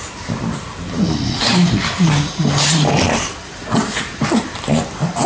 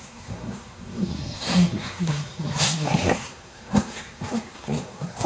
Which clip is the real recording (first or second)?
first